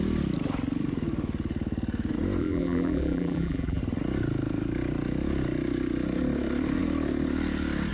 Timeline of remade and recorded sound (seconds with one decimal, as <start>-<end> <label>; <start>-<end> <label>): 0.0-2.4 recorded; 2.4-3.8 remade; 3.8-7.9 recorded